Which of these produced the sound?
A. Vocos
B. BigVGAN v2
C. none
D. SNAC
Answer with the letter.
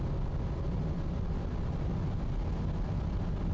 C